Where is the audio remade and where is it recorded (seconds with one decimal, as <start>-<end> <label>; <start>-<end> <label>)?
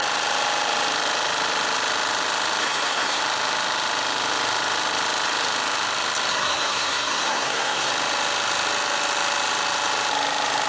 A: 0.0-2.6 recorded; 2.6-3.2 remade; 3.2-6.3 recorded; 6.3-7.9 remade; 7.9-10.7 recorded